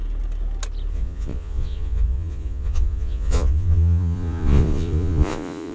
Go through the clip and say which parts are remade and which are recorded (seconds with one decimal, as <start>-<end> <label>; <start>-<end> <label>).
0.0-0.9 recorded; 0.9-5.7 remade